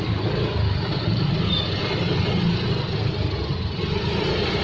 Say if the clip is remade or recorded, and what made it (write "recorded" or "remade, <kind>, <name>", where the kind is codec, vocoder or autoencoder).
recorded